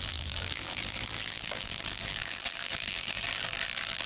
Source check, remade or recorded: remade